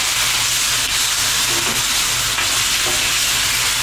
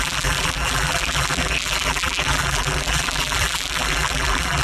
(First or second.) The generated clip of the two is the second